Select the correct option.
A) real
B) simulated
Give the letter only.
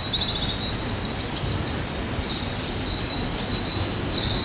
A